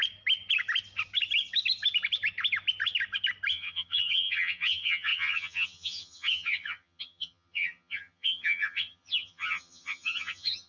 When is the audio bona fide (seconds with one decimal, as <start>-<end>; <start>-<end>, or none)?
0.0-3.5